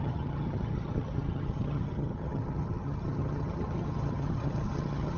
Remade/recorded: remade